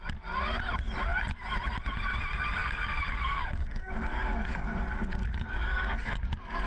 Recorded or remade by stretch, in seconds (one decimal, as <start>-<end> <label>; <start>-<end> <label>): 0.0-2.6 recorded; 2.6-6.7 remade